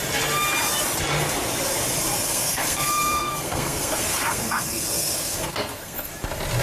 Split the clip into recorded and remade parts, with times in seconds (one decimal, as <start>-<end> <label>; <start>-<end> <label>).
0.0-2.1 recorded; 2.1-6.1 remade; 6.1-6.6 recorded